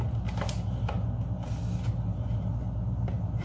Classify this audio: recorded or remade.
recorded